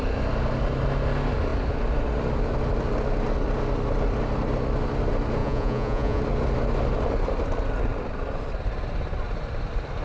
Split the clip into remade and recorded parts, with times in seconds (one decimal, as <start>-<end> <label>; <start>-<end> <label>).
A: 0.0-5.4 recorded; 5.4-6.2 remade; 6.2-10.0 recorded